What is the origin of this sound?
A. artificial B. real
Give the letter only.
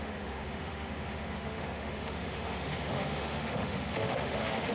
A